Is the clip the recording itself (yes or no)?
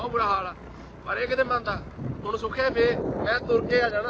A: yes